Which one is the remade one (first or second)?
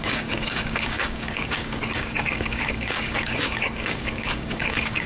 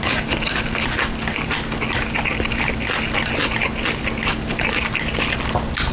first